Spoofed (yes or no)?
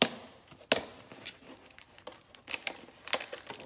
no